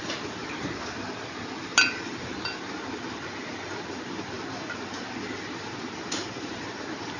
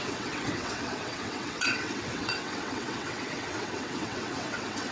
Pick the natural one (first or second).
first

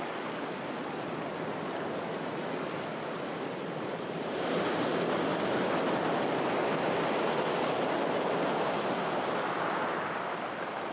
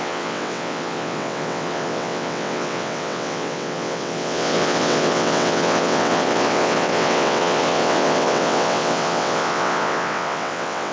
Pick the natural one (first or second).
first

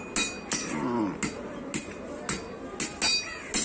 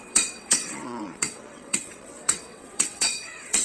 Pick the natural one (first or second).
first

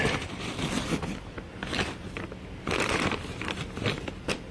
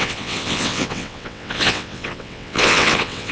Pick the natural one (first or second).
first